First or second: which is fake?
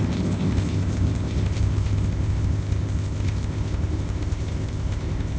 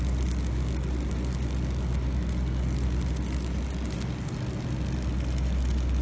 first